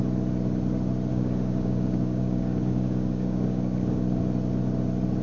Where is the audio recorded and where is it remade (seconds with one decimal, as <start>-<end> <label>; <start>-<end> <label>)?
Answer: 0.0-1.1 recorded; 1.1-4.2 remade; 4.2-5.2 recorded